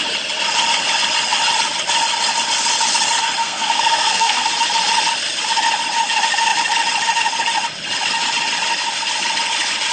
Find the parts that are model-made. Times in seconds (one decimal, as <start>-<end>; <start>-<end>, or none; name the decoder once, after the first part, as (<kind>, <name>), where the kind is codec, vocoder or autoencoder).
3.4-4.5 (codec, SNAC)